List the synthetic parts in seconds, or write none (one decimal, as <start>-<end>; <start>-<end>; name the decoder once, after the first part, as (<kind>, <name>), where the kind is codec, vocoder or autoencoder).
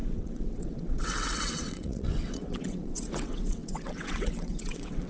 0.0-5.1 (vocoder, WaveNeXt)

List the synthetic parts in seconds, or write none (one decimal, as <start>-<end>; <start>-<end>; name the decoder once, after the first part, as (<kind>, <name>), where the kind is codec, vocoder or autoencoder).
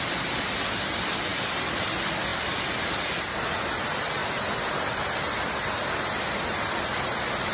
2.3-3.1 (vocoder, BigVGAN v2)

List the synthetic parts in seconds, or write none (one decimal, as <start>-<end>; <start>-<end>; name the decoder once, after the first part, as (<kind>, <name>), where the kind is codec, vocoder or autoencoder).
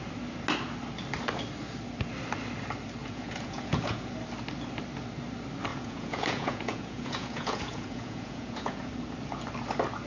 3.0-4.1 (vocoder, Vocos); 5.7-8.9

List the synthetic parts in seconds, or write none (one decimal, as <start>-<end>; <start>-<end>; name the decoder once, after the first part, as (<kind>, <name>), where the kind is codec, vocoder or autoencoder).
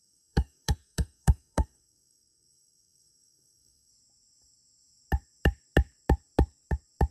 0.0-3.9 (codec, SNAC)